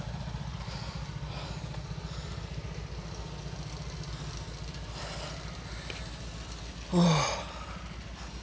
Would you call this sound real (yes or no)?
yes